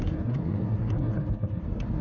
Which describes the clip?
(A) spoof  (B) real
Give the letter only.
A